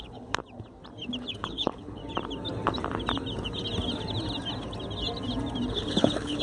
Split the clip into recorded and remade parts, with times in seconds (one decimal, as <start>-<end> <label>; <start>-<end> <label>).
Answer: 0.0-0.4 remade; 0.4-1.3 recorded; 1.3-2.0 remade; 2.0-5.7 recorded; 5.7-6.4 remade